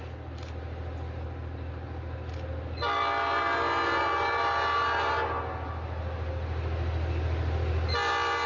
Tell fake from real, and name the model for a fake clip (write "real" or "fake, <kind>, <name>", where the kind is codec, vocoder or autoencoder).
real